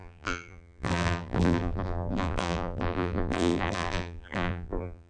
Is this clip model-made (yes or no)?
yes